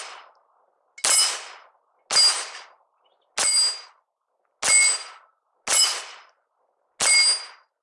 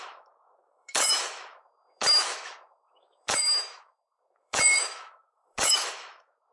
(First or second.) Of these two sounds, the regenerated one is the second